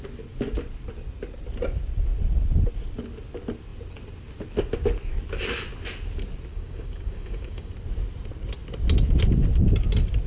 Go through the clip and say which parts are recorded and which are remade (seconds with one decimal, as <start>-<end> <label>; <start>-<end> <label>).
0.0-6.5 recorded; 6.5-7.7 remade; 7.7-10.3 recorded